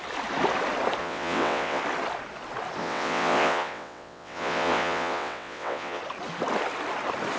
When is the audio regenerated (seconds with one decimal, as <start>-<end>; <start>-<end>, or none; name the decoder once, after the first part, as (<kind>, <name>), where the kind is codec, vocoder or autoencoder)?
1.0-1.8 (vocoder, WaveNeXt); 2.8-6.0